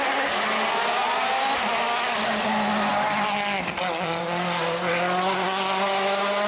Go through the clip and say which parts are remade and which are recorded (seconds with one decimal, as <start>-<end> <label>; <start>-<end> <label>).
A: 0.0-6.5 recorded